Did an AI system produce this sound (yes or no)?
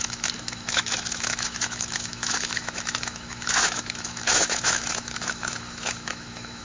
yes